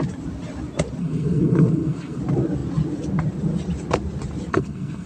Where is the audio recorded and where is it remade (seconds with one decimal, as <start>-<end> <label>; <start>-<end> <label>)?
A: 0.0-1.0 recorded; 1.0-2.2 remade; 2.2-4.5 recorded; 4.5-5.1 remade